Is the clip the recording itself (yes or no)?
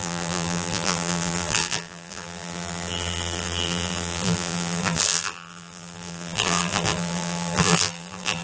no